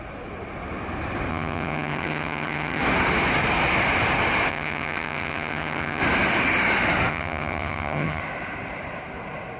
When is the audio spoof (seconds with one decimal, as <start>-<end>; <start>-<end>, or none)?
1.3-2.8; 4.5-6.0; 7.1-8.2